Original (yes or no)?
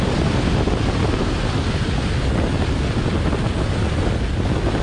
yes